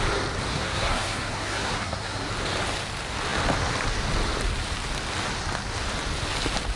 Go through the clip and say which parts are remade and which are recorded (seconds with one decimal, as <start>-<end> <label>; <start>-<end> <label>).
0.0-0.5 recorded; 0.5-2.3 remade; 2.3-6.8 recorded